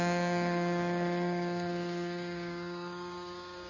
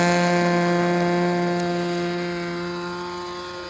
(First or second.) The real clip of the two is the second